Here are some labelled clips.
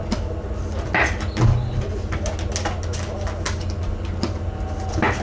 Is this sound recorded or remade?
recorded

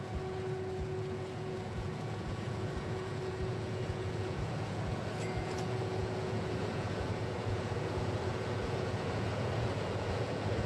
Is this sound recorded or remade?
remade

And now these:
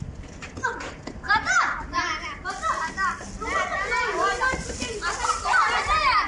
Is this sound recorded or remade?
recorded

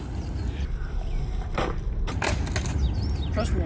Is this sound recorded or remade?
recorded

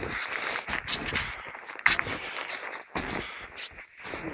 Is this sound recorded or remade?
recorded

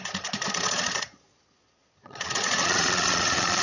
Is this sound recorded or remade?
remade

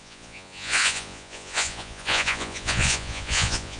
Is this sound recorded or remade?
remade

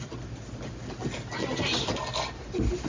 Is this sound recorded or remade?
recorded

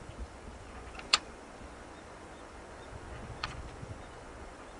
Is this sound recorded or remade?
remade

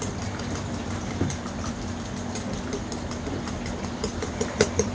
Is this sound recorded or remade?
recorded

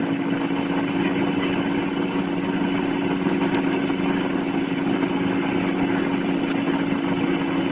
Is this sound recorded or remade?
recorded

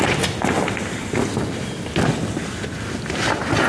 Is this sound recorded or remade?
recorded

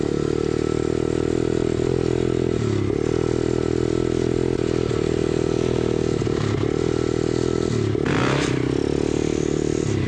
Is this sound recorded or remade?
recorded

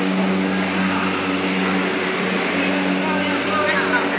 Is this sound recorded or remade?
recorded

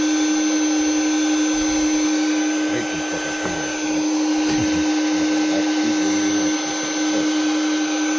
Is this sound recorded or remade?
recorded